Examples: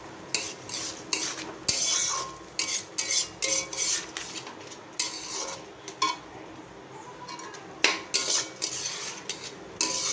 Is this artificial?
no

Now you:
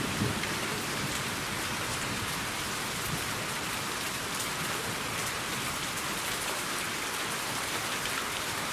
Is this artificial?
yes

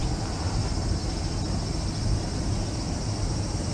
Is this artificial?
no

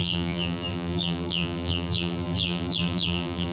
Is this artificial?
yes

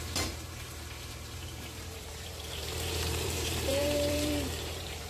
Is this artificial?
yes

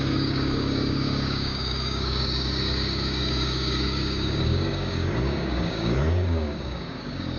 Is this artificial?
yes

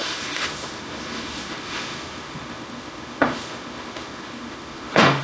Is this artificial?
yes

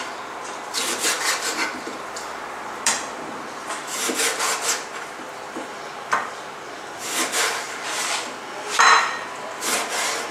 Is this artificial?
no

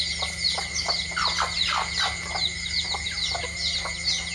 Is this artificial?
no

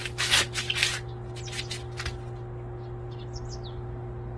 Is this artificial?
no